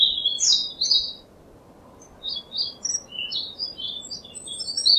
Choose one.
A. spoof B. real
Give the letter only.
B